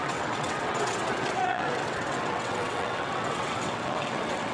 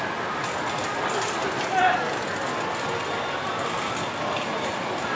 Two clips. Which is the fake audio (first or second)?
first